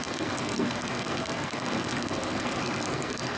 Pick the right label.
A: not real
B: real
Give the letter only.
A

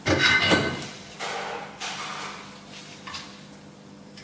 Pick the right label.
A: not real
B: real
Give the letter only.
B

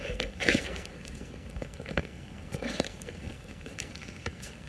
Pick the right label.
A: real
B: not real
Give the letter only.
B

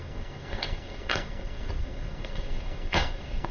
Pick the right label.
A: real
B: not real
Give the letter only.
B